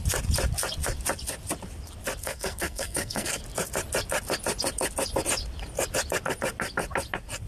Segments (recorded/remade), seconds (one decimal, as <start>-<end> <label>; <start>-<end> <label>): 0.0-2.2 recorded; 2.2-3.4 remade; 3.4-7.5 recorded